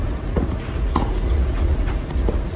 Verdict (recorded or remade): remade